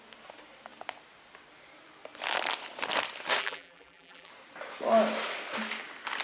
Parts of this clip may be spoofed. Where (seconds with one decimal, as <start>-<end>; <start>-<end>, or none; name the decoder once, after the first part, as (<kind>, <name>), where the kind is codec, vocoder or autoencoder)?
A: 3.4-4.3 (vocoder, BigVGAN v2)